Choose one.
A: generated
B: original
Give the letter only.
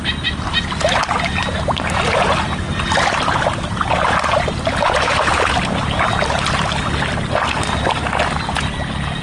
B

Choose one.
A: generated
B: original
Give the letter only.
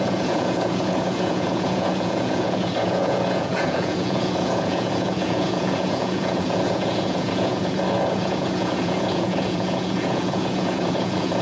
A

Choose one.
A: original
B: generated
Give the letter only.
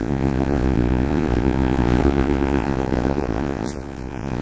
B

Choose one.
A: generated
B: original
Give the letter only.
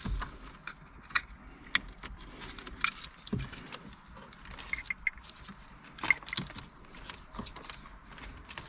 B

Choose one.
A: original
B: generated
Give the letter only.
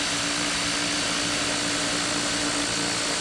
A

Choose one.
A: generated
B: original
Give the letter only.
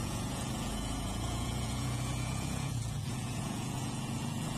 A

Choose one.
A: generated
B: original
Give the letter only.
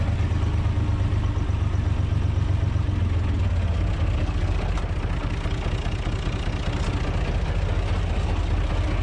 B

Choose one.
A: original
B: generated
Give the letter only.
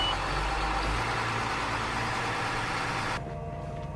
A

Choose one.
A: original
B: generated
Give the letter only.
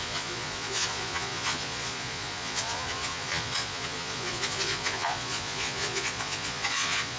B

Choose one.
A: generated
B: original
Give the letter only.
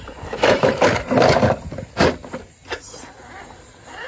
B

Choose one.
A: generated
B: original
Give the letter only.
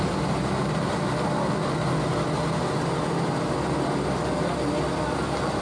B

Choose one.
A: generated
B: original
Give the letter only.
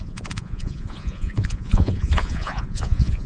A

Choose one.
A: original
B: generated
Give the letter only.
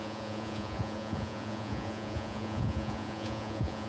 B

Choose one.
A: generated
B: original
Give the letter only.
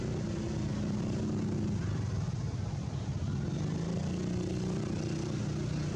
B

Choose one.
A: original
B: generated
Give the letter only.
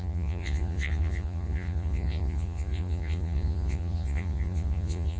B